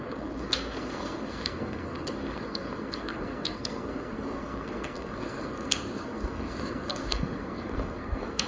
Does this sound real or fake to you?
fake